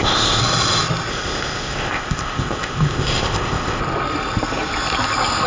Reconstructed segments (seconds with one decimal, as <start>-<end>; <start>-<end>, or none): 0.0-0.4; 1.1-3.8